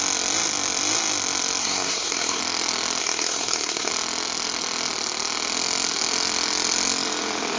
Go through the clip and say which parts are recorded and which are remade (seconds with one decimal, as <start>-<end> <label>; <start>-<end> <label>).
0.0-1.6 recorded; 1.6-2.4 remade; 2.4-3.0 recorded; 3.0-3.9 remade; 3.9-7.6 recorded

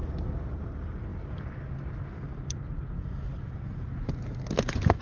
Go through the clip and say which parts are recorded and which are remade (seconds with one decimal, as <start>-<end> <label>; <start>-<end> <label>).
0.0-5.0 recorded

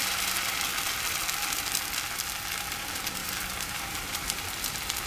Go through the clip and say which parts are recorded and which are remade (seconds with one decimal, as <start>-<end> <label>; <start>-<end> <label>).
0.0-3.2 recorded; 3.2-4.5 remade; 4.5-5.1 recorded